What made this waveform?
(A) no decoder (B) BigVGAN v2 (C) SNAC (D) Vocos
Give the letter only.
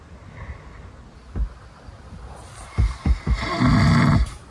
A